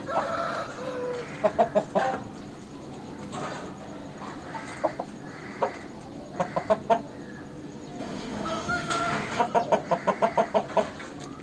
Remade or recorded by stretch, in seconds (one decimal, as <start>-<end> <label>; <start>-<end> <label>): 0.0-8.0 recorded; 8.0-9.4 remade; 9.4-11.4 recorded